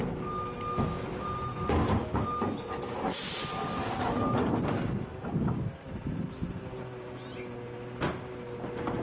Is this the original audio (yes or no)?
yes